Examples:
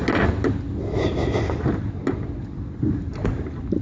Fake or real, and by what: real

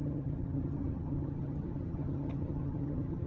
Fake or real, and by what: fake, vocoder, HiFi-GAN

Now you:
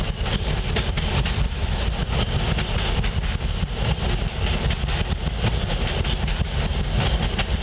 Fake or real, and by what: real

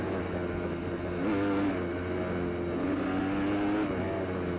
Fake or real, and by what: real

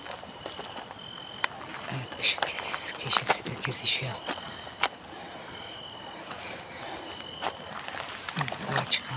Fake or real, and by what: real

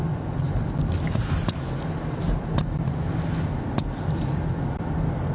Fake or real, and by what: real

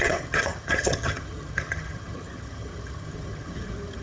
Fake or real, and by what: fake, vocoder, HiFi-GAN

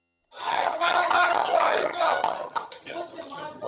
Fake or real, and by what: fake, vocoder, HiFi-GAN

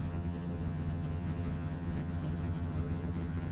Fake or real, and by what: fake, vocoder, HiFi-GAN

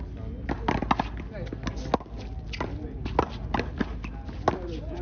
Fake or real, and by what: real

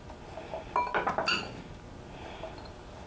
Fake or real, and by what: real